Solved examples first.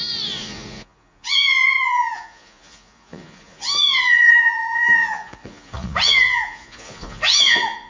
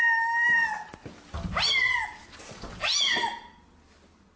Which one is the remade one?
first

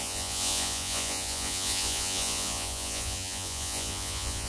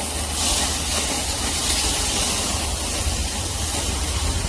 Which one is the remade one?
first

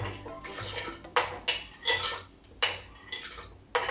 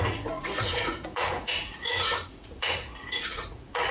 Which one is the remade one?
second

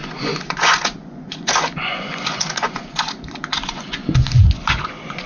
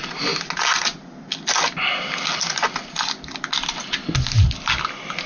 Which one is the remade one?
first